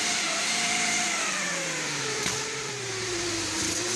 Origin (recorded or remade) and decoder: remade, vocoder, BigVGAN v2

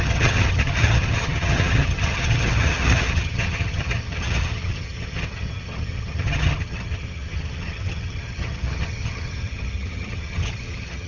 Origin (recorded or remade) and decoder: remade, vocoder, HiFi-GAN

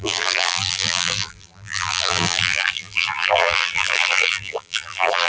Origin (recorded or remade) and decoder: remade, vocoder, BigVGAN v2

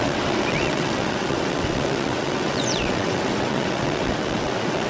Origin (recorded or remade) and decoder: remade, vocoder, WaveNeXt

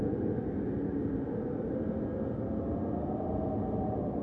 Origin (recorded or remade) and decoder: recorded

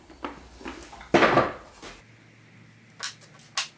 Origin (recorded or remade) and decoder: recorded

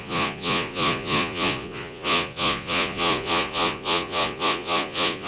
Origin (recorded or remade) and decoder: remade, vocoder, Vocos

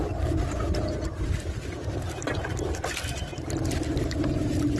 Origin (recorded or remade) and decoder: recorded